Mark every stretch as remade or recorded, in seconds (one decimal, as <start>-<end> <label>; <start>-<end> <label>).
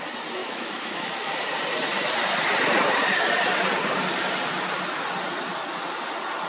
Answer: 0.0-0.4 recorded; 0.4-1.3 remade; 1.3-6.5 recorded